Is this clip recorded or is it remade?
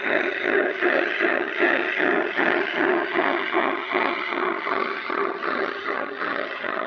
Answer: remade